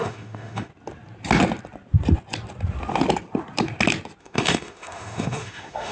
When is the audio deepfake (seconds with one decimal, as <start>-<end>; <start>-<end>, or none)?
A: 0.0-0.7; 4.2-5.9